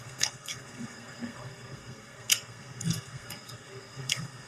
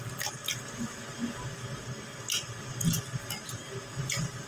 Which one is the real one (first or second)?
second